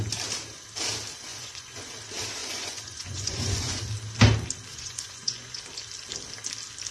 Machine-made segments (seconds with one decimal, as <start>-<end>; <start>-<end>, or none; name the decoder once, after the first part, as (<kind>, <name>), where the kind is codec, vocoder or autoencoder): 1.3-1.9 (vocoder, Vocos); 2.4-3.8; 4.7-5.6